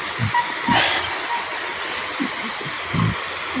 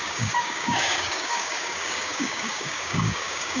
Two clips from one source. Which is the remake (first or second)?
second